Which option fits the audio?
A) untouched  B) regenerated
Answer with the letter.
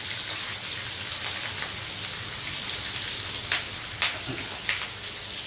A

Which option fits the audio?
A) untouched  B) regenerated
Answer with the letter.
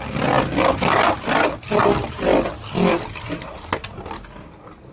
A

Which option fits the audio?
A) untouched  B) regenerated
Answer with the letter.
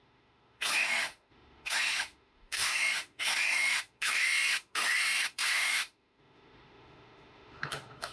B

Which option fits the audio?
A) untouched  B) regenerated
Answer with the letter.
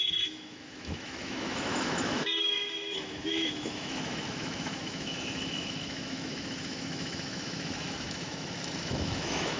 B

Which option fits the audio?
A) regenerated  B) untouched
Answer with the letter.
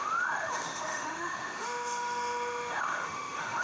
A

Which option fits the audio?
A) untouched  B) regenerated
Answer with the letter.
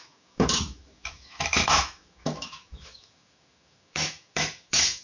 B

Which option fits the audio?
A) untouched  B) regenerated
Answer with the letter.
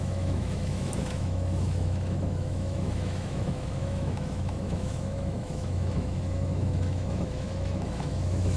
B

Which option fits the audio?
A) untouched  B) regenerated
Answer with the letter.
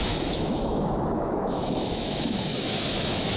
B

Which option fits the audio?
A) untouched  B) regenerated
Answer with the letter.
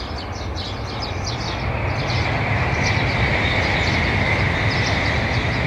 A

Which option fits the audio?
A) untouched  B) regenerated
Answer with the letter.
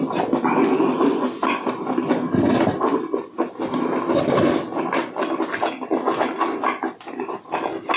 A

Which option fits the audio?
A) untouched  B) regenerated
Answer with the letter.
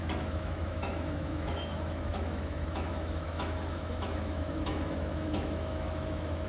B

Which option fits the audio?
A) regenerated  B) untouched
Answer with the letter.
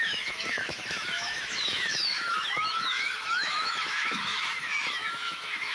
A